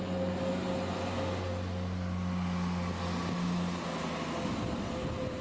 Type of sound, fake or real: real